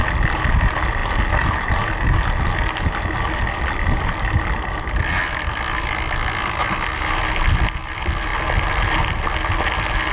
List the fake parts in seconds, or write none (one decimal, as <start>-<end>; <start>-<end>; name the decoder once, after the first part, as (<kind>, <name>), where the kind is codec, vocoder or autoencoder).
none